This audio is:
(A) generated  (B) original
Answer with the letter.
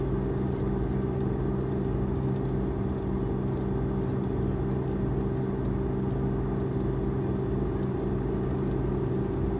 B